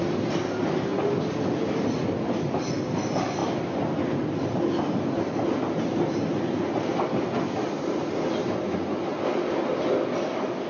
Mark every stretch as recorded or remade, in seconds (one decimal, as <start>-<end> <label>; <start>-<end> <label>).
0.0-10.7 recorded